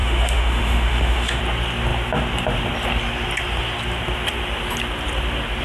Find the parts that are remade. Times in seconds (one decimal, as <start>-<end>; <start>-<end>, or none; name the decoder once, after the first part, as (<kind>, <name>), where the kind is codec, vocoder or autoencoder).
0.0-1.4 (autoencoder, DAC-VAE)